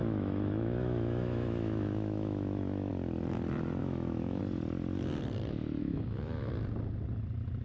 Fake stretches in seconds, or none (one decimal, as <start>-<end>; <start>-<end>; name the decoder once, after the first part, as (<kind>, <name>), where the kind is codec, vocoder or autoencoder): 0.0-2.9 (autoencoder, DAC-VAE); 3.8-4.4; 5.8-6.5